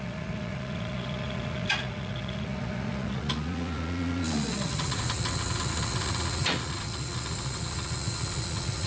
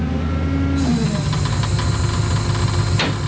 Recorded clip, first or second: second